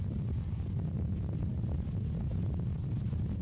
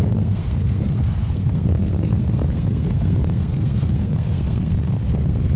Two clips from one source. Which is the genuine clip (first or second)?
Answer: first